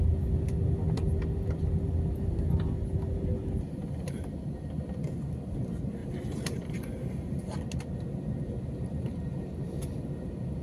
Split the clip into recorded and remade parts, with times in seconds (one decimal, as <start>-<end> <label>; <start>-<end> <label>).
0.0-3.8 recorded; 3.8-4.7 remade; 4.7-6.0 recorded; 6.0-7.6 remade; 7.6-10.6 recorded